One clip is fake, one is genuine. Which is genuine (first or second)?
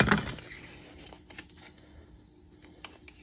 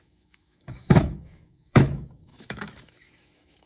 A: first